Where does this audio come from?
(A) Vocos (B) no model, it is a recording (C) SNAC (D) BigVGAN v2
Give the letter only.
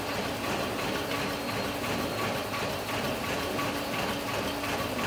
B